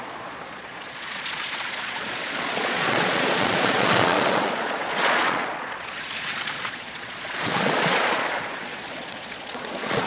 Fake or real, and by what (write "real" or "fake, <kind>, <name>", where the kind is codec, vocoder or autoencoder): fake, vocoder, Vocos